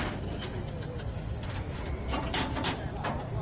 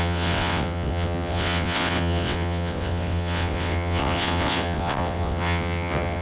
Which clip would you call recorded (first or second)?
first